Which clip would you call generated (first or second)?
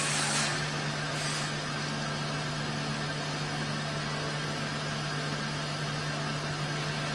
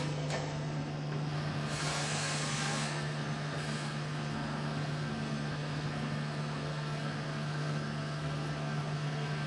second